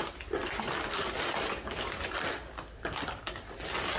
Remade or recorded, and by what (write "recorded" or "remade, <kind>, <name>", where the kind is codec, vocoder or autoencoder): recorded